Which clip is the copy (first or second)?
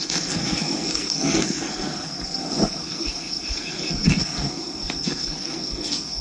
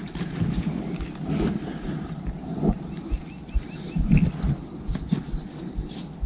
first